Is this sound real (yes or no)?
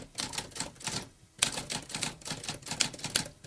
yes